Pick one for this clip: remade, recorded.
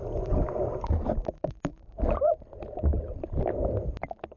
recorded